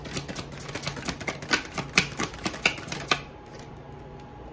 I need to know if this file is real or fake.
real